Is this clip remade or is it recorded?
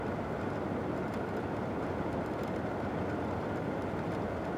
recorded